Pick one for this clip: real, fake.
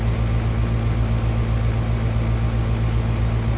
real